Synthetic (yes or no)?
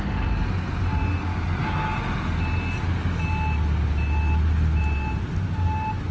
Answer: no